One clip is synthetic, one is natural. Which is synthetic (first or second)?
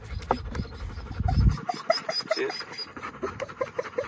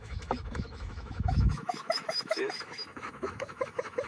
second